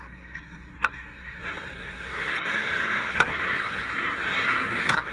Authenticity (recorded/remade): remade